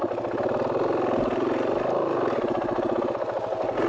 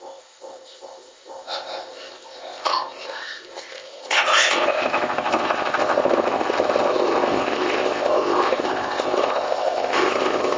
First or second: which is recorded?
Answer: first